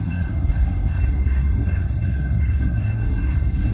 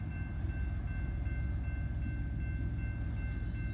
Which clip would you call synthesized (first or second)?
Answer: first